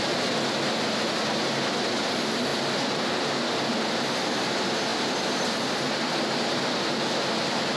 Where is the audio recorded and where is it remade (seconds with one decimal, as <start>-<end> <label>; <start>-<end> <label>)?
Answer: 0.0-7.8 recorded